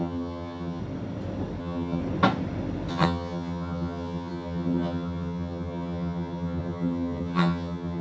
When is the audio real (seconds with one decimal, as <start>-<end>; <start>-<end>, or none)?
0.8-1.6; 2.0-2.9